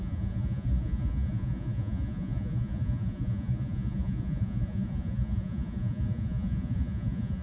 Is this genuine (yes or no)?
no